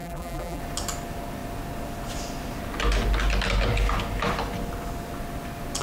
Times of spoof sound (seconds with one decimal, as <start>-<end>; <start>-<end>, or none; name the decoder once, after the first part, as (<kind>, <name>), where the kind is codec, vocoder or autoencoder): 0.0-0.6 (vocoder, BigVGAN v2)